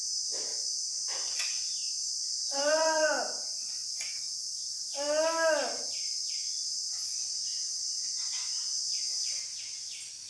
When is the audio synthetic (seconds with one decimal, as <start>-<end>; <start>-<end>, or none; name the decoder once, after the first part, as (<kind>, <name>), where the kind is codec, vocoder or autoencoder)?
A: 0.5-3.9 (vocoder, BigVGAN v2)